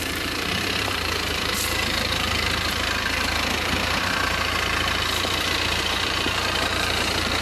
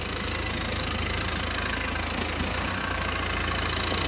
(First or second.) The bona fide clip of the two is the second